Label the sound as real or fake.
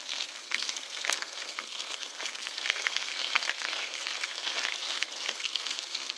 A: fake